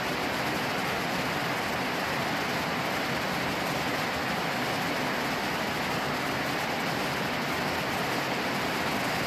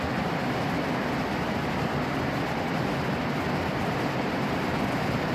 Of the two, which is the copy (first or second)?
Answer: second